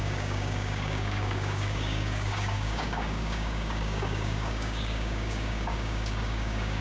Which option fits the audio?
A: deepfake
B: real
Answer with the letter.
A